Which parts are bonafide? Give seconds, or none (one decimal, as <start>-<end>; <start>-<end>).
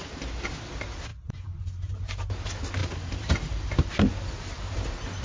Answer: 0.0-1.1; 2.0-2.8; 3.9-5.2